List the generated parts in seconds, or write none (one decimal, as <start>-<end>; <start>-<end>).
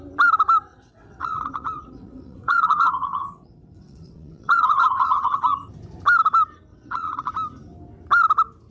0.7-5.4; 6.7-7.3